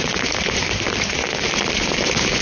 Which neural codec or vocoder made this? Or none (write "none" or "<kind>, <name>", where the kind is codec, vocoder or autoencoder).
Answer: none